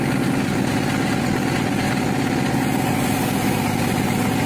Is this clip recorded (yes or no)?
yes